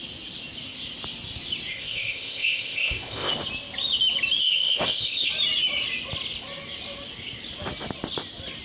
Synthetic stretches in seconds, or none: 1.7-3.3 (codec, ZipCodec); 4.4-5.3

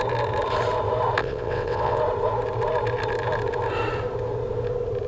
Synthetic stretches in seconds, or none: 1.2-2.0 (vocoder, WaveNeXt)

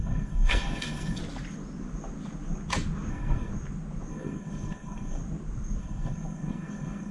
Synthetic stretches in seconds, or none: 0.0-1.2 (codec, SNAC); 3.1-3.5; 4.1-5.2; 5.8-7.1